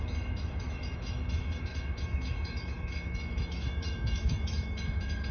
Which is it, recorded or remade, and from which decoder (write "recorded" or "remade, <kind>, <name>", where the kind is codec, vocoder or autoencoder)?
remade, autoencoder, DAC-VAE